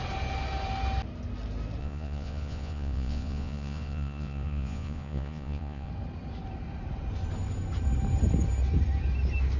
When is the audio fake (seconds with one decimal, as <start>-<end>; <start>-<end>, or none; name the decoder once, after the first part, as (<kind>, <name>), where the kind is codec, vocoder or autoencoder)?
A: 1.8-5.9 (vocoder, Vocos)